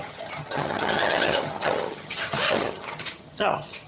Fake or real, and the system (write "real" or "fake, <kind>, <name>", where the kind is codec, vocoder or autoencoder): fake, vocoder, HiFi-GAN